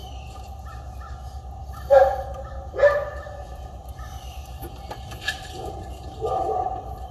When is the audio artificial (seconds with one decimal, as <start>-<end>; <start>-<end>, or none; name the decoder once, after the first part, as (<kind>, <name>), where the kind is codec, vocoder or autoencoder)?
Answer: 1.6-5.9 (vocoder, BigVGAN v2)